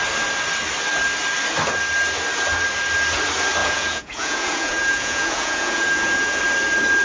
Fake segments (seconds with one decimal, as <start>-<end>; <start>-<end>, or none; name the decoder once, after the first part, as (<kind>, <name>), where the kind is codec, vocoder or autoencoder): 3.6-6.4 (vocoder, Vocos)